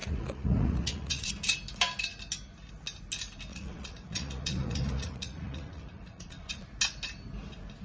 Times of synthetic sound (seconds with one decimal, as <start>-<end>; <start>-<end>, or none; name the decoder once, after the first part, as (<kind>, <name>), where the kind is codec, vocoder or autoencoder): 0.0-1.3 (vocoder, Vocos); 3.5-6.6